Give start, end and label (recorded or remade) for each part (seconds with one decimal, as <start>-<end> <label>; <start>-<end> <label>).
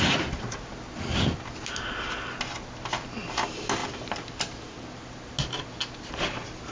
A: 0.0-6.7 recorded